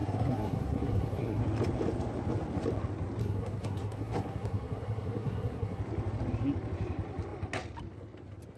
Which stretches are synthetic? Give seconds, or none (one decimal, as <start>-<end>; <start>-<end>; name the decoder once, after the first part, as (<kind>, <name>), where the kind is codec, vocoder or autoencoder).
0.0-1.4 (codec, SNAC); 3.2-5.8